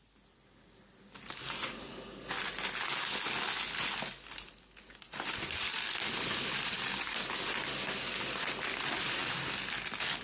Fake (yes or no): no